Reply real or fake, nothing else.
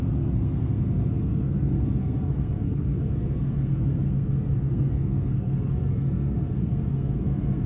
fake